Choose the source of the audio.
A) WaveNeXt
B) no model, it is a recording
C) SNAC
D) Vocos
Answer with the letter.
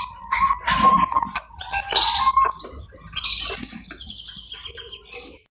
B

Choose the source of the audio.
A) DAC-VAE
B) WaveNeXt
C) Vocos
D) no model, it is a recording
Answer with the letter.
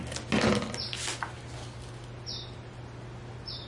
D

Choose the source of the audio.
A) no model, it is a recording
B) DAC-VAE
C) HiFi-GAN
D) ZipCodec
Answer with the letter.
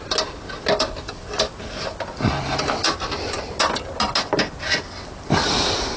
A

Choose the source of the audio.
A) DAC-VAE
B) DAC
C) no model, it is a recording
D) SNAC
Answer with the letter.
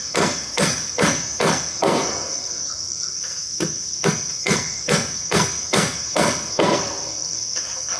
D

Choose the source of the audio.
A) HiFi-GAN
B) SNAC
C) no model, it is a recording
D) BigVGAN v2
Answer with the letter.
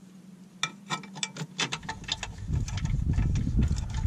C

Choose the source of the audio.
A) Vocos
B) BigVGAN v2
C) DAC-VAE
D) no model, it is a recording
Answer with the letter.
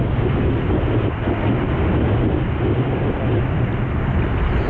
D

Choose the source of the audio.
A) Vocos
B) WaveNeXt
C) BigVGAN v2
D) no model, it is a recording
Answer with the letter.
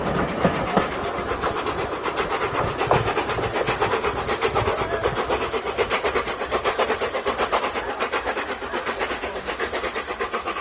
D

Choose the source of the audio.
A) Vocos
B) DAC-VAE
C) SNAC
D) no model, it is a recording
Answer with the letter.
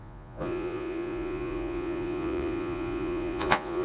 A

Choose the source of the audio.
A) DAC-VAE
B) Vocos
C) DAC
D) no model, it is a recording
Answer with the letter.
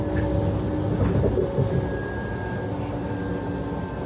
D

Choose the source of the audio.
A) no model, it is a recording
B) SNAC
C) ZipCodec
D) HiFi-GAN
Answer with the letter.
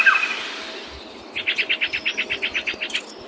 A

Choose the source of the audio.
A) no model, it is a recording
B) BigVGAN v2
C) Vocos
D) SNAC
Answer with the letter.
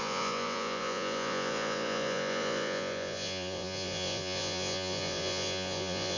C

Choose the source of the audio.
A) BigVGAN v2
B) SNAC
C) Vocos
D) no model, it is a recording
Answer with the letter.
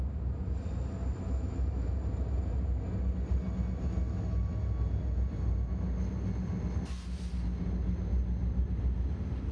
D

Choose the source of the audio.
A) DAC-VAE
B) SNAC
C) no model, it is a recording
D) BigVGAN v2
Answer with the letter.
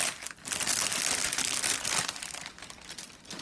C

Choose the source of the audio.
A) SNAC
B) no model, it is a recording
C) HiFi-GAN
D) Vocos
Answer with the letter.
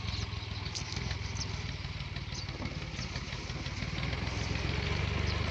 B